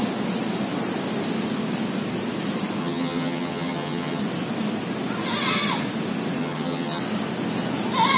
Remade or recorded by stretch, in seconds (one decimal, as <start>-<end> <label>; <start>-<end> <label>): 0.0-2.8 recorded; 2.8-4.2 remade; 4.2-6.4 recorded; 6.4-7.0 remade; 7.0-8.2 recorded